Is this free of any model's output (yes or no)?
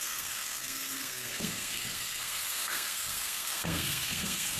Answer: no